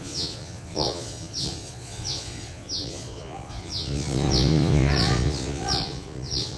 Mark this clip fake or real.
fake